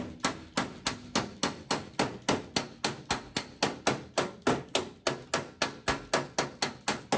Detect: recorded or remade recorded